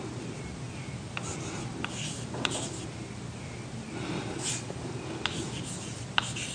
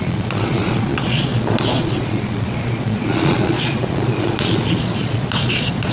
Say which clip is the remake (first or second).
second